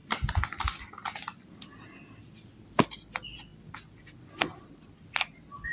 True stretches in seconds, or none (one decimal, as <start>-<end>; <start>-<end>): 0.0-1.7; 3.5-4.7